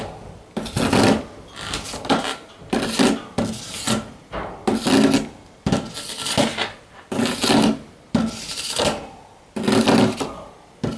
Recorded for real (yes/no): yes